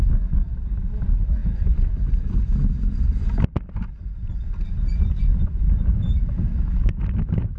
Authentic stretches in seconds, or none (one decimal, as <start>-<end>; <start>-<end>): 0.0-5.3; 6.4-7.6

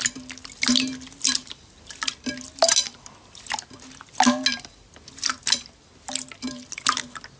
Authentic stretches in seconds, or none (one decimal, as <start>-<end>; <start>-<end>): 0.0-7.4

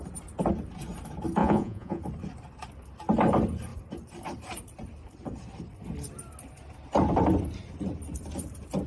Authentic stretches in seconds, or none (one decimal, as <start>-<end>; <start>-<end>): 0.0-1.4; 2.0-8.9

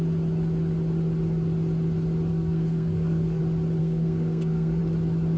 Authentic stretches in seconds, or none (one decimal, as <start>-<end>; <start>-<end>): 0.0-2.3; 3.4-3.8; 4.8-5.4